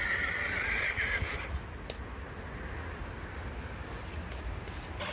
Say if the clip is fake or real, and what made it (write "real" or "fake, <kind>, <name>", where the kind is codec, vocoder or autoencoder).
real